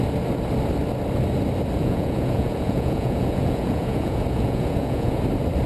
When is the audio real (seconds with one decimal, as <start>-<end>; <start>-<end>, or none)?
0.0-1.8; 5.2-5.7